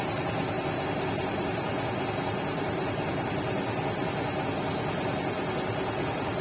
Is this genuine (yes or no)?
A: yes